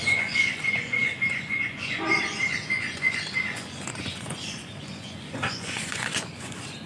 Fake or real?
fake